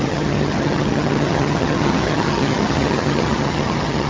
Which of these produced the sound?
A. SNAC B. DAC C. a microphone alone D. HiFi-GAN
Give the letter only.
D